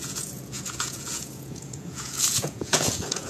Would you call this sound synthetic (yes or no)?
yes